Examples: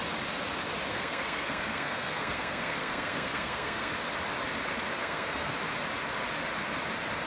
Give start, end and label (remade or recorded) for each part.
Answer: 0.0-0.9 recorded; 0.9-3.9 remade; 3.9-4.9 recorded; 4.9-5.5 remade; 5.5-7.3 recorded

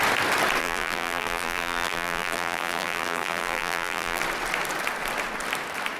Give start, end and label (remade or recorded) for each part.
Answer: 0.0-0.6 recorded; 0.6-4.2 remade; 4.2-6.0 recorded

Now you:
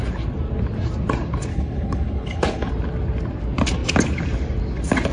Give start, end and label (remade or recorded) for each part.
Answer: 0.0-1.5 recorded; 1.5-2.7 remade; 2.7-5.1 recorded

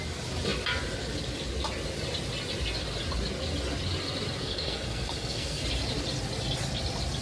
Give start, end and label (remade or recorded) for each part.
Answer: 0.0-4.4 recorded; 4.4-5.6 remade; 5.6-7.2 recorded